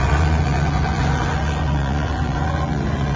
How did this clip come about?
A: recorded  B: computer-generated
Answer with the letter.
B